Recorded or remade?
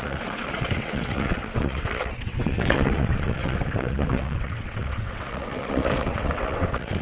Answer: remade